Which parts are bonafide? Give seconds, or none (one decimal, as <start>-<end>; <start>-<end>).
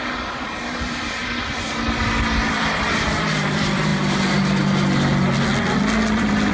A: 3.9-6.1